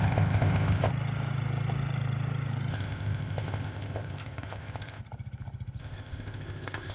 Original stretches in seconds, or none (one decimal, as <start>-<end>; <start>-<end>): 0.9-2.7; 5.0-5.8